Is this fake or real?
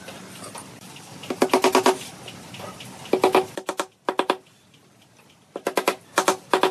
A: real